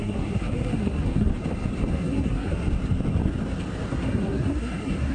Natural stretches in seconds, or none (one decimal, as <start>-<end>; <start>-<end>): 1.3-1.9; 2.5-3.9